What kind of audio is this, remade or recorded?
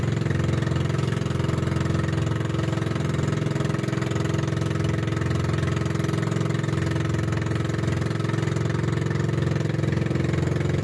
recorded